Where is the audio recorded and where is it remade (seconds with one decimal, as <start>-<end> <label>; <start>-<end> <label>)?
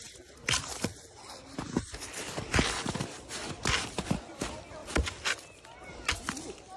0.0-6.8 recorded